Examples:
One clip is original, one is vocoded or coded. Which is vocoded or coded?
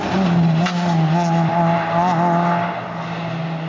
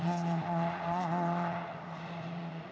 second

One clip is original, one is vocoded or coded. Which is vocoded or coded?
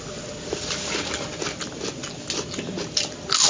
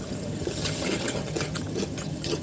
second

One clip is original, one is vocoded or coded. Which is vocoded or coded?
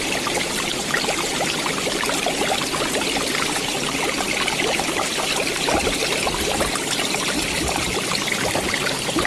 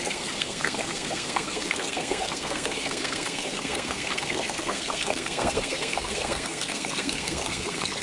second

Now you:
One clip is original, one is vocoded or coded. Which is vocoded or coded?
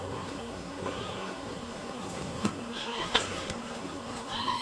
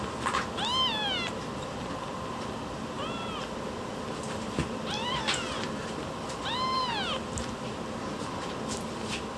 first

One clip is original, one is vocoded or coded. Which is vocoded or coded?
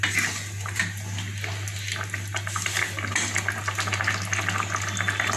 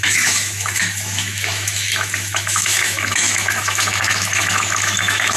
second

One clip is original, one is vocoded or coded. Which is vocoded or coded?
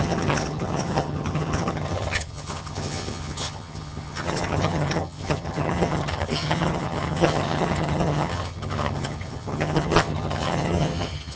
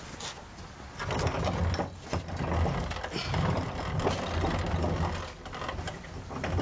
first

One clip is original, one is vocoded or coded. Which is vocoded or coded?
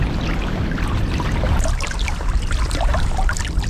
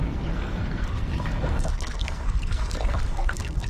second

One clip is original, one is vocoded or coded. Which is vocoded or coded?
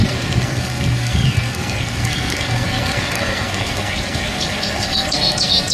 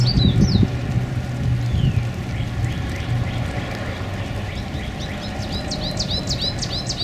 first